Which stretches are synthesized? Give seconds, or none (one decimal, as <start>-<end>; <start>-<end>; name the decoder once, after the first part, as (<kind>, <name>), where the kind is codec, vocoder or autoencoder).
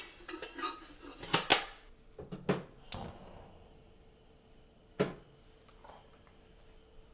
none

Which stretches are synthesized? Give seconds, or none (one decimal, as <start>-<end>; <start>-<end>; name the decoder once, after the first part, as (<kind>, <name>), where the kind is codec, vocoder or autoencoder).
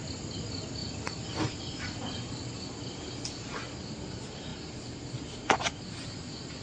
none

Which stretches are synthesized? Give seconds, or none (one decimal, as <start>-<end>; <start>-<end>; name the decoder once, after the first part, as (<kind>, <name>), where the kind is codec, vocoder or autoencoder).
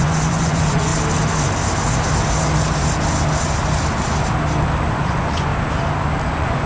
0.0-0.9 (vocoder, Vocos); 4.9-5.5; 6.3-6.7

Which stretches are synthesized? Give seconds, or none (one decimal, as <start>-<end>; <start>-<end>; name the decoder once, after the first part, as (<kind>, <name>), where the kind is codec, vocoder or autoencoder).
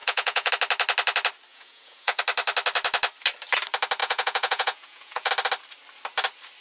0.0-0.5 (vocoder, Vocos); 1.5-2.2; 4.0-5.3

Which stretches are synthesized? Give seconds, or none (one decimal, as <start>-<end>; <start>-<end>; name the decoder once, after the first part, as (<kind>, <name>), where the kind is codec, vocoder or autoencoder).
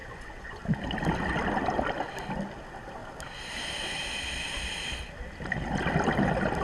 0.0-0.6 (vocoder, Vocos)